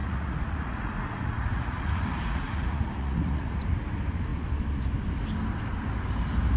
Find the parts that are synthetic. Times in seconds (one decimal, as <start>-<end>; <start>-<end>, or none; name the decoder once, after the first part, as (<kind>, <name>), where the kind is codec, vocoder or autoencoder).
0.0-3.5 (vocoder, Vocos)